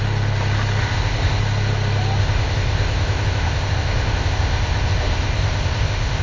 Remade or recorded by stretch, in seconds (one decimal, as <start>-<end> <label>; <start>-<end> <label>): 0.0-0.8 recorded; 0.8-1.4 remade; 1.4-2.2 recorded; 2.2-6.2 remade